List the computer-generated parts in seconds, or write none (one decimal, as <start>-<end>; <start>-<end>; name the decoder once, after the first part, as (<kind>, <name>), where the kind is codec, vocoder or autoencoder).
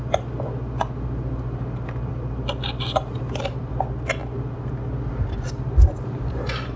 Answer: none